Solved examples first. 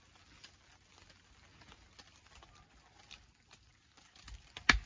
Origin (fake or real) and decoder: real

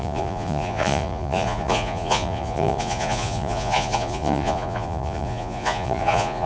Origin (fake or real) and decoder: fake, vocoder, Vocos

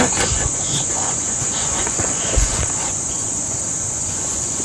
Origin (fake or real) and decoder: fake, vocoder, Vocos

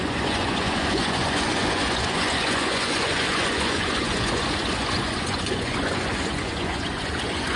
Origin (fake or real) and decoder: fake, vocoder, Vocos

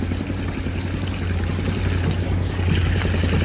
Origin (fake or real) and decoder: real